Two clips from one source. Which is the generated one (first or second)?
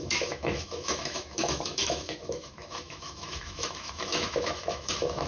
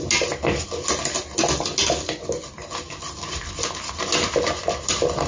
first